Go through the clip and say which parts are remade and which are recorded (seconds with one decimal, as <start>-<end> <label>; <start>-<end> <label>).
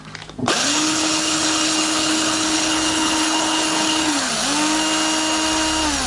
0.0-0.6 recorded; 0.6-4.3 remade; 4.3-6.1 recorded